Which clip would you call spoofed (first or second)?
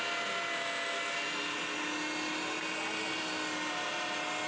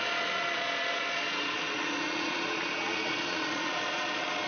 second